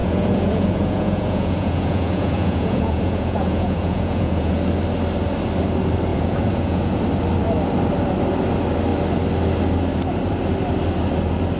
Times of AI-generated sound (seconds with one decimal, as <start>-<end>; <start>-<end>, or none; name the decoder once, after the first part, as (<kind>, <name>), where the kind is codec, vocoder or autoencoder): 0.0-4.6 (vocoder, Vocos); 6.1-7.0